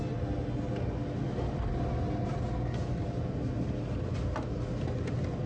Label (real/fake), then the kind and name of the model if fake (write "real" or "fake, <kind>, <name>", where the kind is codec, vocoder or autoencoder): real